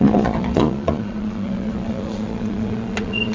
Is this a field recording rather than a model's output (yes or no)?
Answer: no